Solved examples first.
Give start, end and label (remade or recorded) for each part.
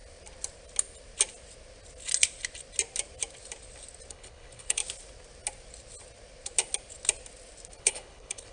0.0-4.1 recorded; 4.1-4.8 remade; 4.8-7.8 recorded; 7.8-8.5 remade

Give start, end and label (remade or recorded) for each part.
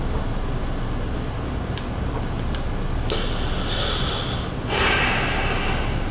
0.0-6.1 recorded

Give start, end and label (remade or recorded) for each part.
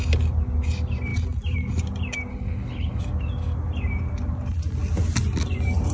0.0-2.3 recorded; 2.3-3.0 remade; 3.0-5.9 recorded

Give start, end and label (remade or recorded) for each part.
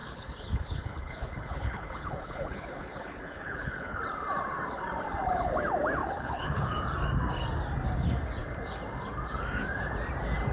0.0-4.0 remade; 4.0-6.0 recorded; 6.0-6.7 remade; 6.7-10.5 recorded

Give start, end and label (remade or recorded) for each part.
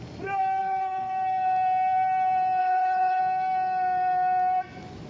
0.0-0.6 recorded; 0.6-1.1 remade; 1.1-2.6 recorded; 2.6-3.2 remade; 3.2-5.1 recorded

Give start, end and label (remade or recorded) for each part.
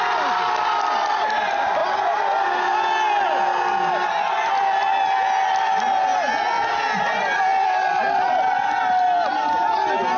0.0-10.2 recorded